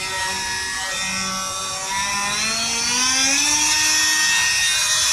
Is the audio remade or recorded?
recorded